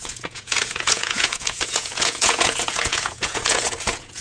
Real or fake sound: fake